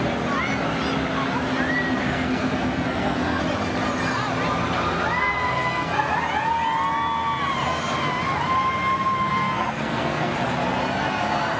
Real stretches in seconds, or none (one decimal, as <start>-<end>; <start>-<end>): 0.0-2.0; 3.4-5.2; 6.1-9.3; 10.3-11.6